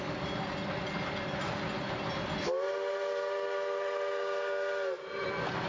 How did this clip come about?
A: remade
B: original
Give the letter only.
B